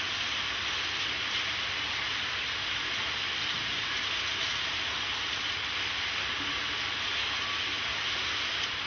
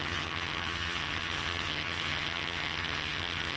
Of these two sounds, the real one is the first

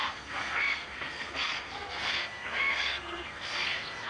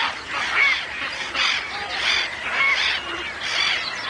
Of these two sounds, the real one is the second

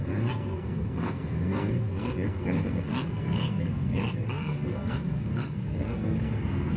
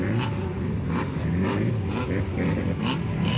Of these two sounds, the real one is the second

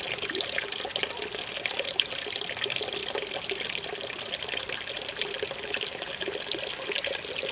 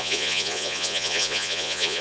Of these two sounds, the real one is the first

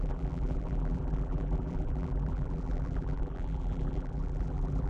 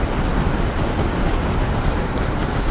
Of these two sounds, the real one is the second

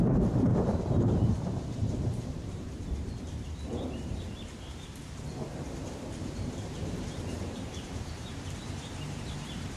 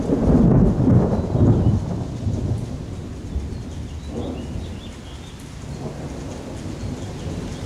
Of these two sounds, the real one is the second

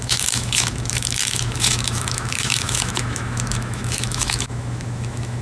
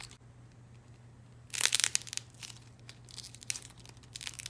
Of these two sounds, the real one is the second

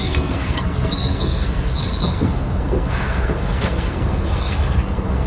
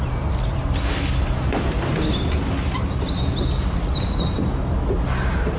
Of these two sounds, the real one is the second